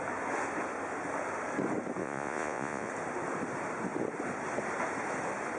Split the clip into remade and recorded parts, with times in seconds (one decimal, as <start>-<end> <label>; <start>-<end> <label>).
0.0-2.0 recorded; 2.0-2.9 remade; 2.9-5.6 recorded